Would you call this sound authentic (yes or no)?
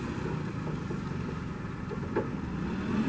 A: yes